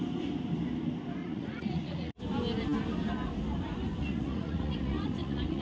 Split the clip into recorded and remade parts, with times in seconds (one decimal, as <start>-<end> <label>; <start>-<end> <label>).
0.0-1.2 recorded; 1.2-2.2 remade; 2.2-4.0 recorded; 4.0-5.6 remade